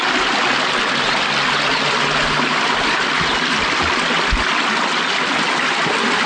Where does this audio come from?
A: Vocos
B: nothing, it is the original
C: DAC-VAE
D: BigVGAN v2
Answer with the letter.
B